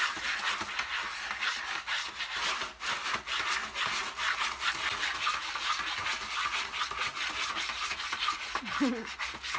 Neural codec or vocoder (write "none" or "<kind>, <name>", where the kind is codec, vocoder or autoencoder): none